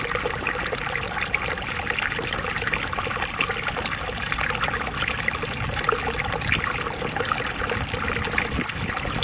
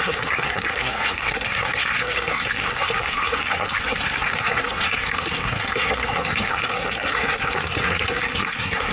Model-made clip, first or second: second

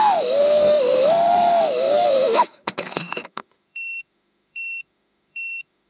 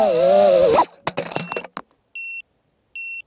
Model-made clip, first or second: first